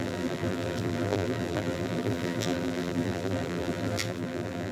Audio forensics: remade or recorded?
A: remade